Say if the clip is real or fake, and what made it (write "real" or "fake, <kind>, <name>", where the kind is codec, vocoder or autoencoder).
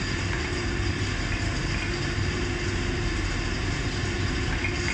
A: real